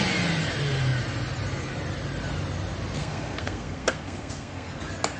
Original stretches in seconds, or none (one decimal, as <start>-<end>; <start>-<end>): 0.0-3.0; 4.8-5.2